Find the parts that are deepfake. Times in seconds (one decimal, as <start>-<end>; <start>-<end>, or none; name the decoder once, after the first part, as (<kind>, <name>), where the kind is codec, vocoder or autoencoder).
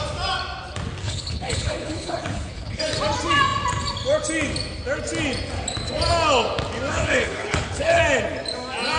1.0-2.8 (codec, HILCodec); 6.9-8.0